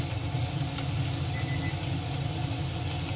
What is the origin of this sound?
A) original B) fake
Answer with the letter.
A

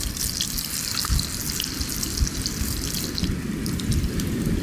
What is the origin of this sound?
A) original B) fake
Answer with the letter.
A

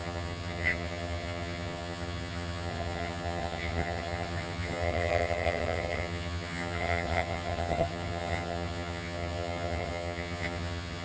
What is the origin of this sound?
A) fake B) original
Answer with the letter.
A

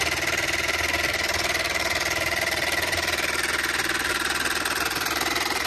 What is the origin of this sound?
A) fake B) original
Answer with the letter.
B